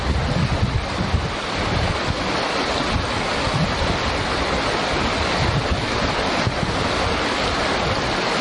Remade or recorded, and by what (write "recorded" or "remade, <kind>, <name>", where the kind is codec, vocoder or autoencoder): recorded